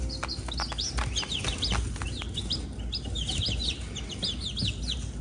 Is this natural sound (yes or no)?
yes